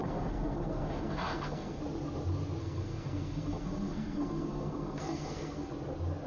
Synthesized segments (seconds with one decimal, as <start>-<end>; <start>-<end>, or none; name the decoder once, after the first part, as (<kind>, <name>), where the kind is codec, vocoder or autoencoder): 0.0-1.8 (codec, SNAC); 2.6-5.7